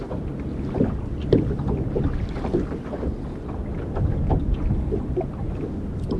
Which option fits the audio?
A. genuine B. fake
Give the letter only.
A